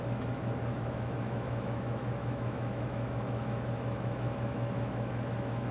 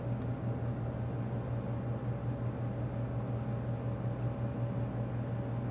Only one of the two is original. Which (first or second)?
second